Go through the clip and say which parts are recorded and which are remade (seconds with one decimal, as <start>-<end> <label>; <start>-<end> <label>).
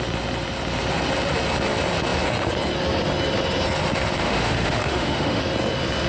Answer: 0.0-4.2 recorded; 4.2-5.4 remade; 5.4-6.1 recorded